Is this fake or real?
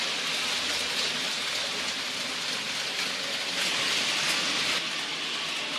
real